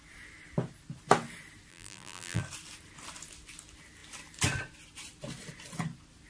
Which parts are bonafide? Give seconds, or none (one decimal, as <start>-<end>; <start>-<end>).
0.0-1.7; 2.4-6.3